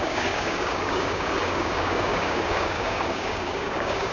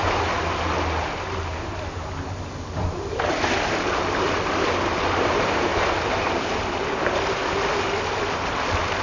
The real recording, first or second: second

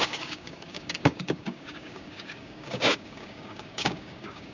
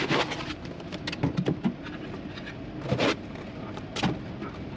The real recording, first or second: second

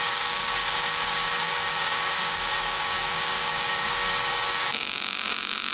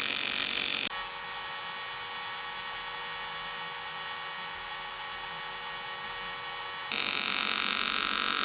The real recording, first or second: second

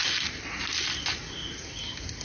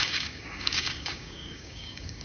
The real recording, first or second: first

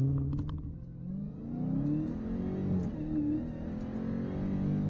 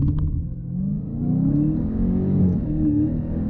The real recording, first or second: first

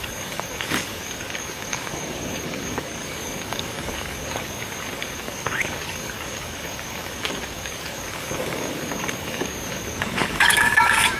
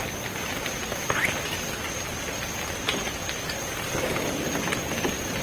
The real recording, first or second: second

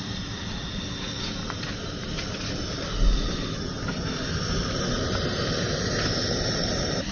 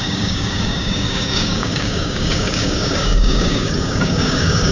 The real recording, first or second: first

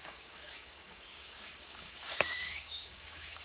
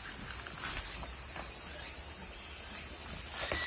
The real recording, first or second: second